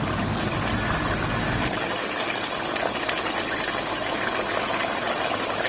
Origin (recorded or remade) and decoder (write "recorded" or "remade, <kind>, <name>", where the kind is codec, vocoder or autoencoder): recorded